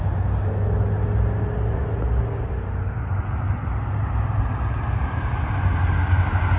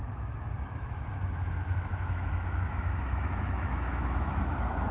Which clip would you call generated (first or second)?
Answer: second